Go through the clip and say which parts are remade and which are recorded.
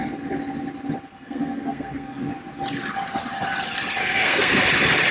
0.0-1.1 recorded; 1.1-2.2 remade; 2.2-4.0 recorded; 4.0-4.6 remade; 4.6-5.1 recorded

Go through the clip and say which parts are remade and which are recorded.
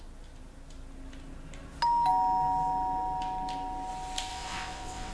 0.0-4.3 recorded; 4.3-5.1 remade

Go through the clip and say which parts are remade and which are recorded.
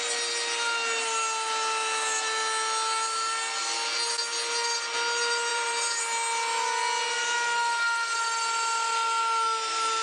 0.0-5.5 recorded; 5.5-6.0 remade; 6.0-10.0 recorded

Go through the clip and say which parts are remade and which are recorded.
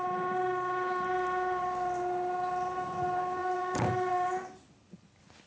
0.0-3.4 recorded; 3.4-4.1 remade; 4.1-5.5 recorded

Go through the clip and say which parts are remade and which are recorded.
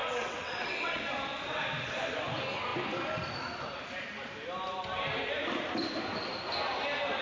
0.0-1.0 remade; 1.0-7.2 recorded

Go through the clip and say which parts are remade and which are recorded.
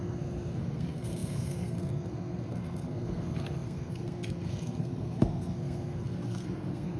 0.0-7.0 remade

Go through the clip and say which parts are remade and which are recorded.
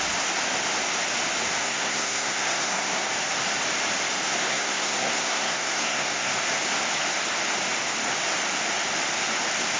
0.0-1.6 recorded; 1.6-3.1 remade; 3.1-4.4 recorded; 4.4-6.3 remade; 6.3-9.8 recorded